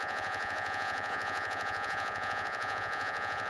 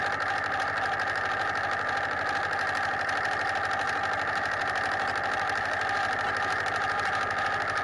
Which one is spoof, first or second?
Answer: first